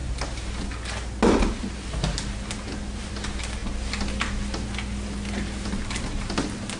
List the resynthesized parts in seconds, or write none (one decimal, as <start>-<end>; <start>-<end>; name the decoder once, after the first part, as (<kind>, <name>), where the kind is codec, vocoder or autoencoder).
none